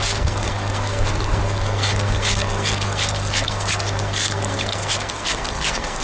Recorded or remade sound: remade